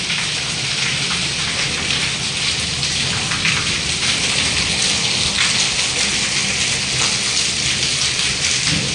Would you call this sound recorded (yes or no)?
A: yes